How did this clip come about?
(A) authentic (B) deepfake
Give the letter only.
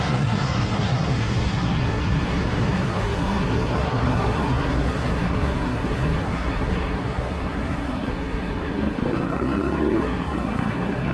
B